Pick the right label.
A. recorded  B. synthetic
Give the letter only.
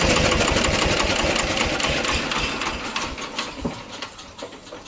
A